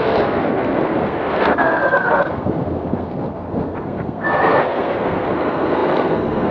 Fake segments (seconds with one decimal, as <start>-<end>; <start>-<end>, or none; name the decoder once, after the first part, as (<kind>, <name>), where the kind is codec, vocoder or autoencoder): 0.0-6.5 (codec, SNAC)